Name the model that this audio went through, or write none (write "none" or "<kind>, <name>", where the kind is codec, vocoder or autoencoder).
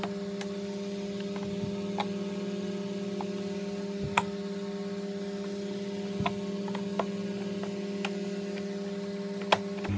none